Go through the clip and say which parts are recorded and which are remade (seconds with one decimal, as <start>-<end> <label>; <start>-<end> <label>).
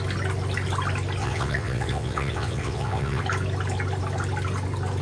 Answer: 0.0-1.2 recorded; 1.2-3.2 remade; 3.2-5.0 recorded